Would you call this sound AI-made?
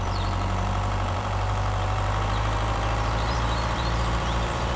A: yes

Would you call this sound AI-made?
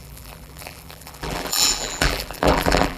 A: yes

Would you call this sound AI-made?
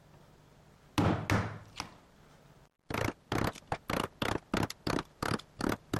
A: no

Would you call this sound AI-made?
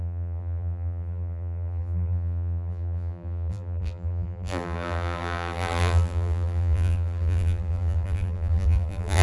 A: yes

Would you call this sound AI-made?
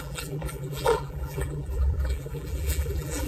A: yes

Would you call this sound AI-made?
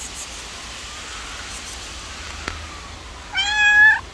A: no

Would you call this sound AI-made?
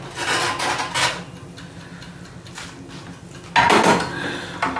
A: no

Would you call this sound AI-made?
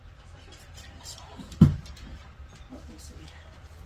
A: yes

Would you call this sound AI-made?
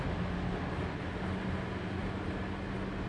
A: no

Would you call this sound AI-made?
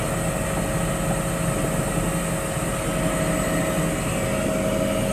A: no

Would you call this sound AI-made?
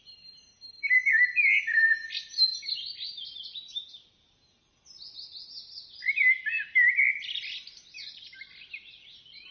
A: no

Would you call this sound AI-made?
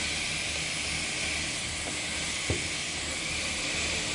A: no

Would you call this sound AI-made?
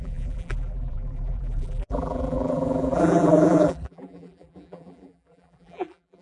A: yes